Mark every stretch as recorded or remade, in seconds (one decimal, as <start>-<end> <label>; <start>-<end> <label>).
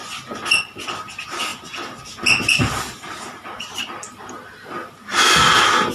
0.0-0.7 remade; 0.7-1.5 recorded; 1.5-4.3 remade; 4.3-5.9 recorded